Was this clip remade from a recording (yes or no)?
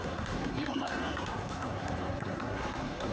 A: yes